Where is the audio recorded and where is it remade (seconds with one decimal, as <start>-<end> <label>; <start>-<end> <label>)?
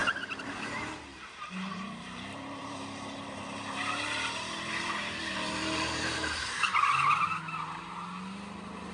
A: 0.0-0.5 remade; 0.5-1.1 recorded; 1.1-6.4 remade; 6.4-8.9 recorded